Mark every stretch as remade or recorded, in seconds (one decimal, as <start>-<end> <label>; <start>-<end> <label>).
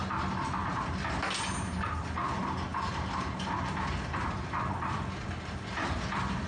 0.0-1.8 recorded; 1.8-6.5 remade